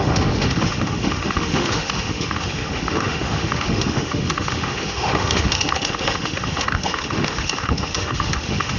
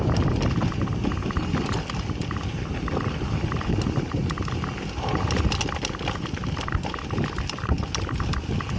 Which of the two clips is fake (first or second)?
first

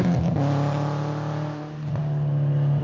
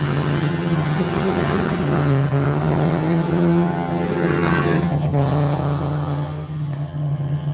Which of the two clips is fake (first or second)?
second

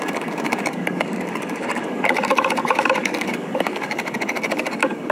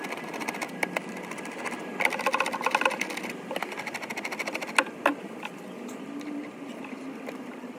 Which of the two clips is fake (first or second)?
first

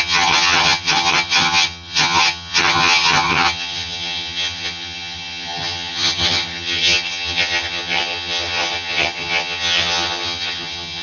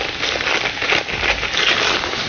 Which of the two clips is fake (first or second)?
first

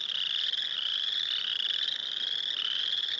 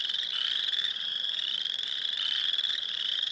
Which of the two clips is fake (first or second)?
second